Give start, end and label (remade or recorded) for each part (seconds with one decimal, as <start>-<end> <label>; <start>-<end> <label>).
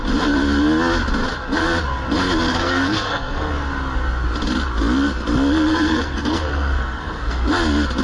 0.0-2.5 recorded; 2.5-3.5 remade; 3.5-5.7 recorded; 5.7-7.5 remade; 7.5-8.0 recorded